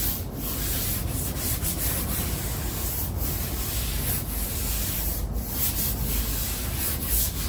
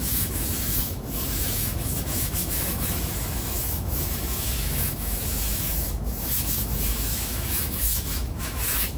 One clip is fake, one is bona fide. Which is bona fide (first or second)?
first